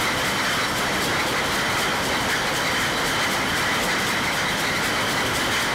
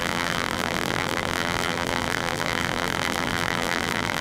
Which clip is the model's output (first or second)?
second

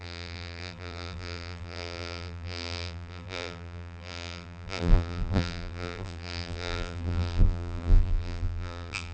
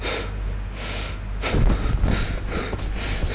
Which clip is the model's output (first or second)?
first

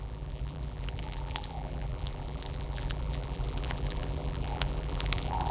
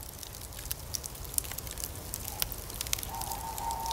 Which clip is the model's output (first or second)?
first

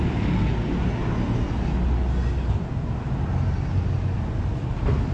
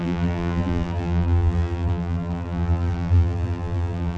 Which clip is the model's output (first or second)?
second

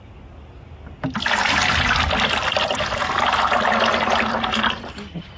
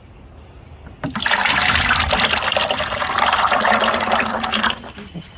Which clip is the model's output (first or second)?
second